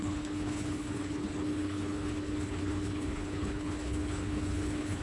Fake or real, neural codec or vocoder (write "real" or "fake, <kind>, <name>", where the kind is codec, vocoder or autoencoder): fake, codec, HILCodec